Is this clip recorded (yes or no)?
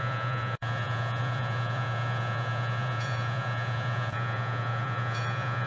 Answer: no